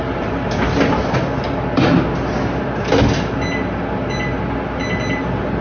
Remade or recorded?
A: recorded